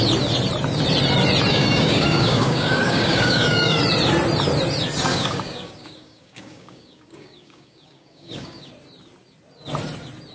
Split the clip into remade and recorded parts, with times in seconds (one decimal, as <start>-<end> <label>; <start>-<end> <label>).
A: 0.0-1.5 recorded; 1.5-3.8 remade; 3.8-5.1 recorded; 5.1-8.7 remade; 8.7-10.3 recorded

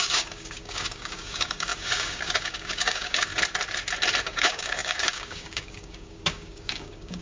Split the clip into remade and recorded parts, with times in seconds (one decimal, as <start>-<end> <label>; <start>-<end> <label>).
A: 0.0-3.3 remade; 3.3-4.2 recorded; 4.2-7.2 remade